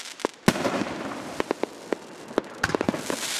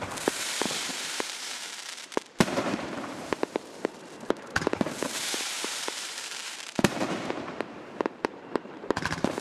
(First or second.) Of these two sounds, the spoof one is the second